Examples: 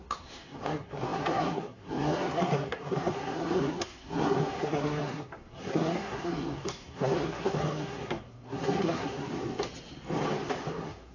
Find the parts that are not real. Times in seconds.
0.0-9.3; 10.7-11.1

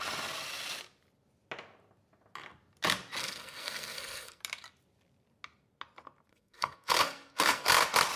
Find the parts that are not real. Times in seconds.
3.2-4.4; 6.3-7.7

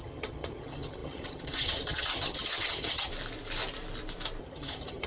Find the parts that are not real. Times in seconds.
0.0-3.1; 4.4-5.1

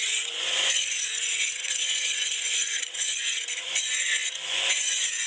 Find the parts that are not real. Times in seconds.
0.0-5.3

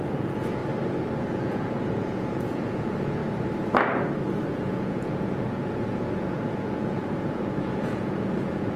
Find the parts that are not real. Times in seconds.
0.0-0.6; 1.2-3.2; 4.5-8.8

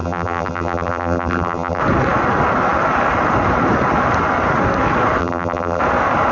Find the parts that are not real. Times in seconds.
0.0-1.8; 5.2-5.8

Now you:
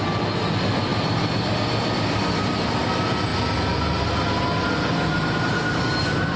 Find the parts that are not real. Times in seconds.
none

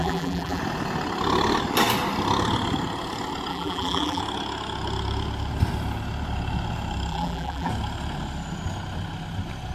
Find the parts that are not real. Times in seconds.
0.0-0.6; 3.5-4.2; 7.1-7.7